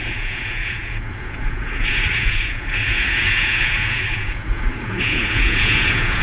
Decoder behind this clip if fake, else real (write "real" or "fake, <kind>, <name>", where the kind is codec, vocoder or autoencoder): fake, vocoder, Vocos